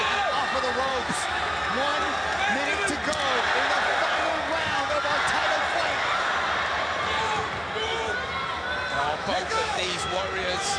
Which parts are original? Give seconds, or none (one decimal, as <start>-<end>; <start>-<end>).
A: 0.0-0.9; 1.4-8.9; 10.2-10.8